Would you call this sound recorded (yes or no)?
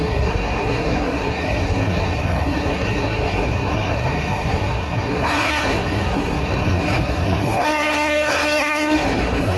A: no